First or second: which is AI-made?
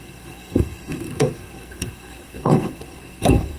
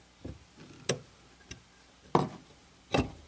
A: first